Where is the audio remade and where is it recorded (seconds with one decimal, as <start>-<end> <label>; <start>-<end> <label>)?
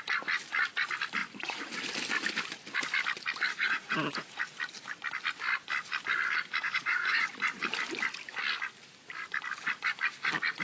0.0-1.2 recorded; 1.2-1.8 remade; 1.8-3.6 recorded; 3.6-4.4 remade; 4.4-6.6 recorded; 6.6-7.3 remade; 7.3-10.6 recorded